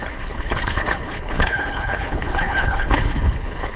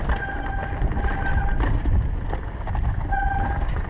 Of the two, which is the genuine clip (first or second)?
second